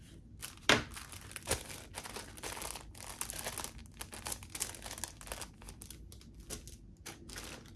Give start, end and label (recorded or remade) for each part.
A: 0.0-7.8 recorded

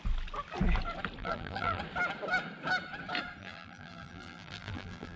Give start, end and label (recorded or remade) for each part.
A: 0.0-1.2 recorded; 1.2-1.8 remade; 1.8-3.4 recorded; 3.4-5.2 remade